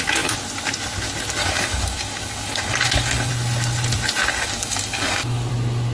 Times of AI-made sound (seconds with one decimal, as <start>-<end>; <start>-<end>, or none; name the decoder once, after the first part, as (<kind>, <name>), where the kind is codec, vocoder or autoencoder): 1.4-3.3 (codec, DAC); 4.3-5.5